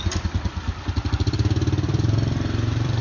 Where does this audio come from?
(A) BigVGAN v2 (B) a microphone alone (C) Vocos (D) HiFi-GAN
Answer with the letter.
A